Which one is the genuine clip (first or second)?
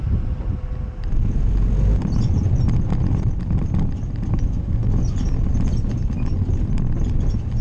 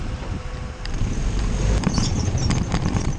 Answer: first